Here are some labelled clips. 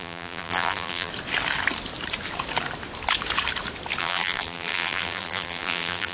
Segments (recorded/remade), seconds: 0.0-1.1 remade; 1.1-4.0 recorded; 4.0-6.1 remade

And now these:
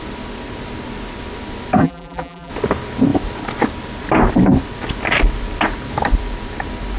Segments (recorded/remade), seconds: 0.0-1.8 recorded; 1.8-2.5 remade; 2.5-7.0 recorded

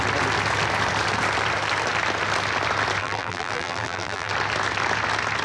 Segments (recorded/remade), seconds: 0.0-3.0 recorded; 3.0-4.3 remade; 4.3-5.4 recorded

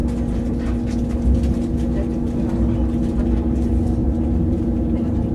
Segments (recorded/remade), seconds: 0.0-4.0 recorded; 4.0-5.3 remade

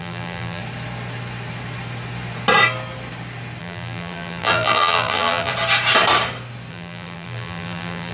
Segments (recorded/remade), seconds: 0.0-0.6 remade; 0.6-3.6 recorded; 3.6-5.5 remade; 5.5-6.7 recorded; 6.7-8.1 remade